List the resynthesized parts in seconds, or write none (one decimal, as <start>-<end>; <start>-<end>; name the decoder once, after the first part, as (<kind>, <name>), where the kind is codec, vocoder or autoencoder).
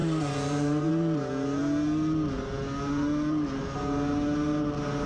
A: 0.0-0.9 (vocoder, BigVGAN v2)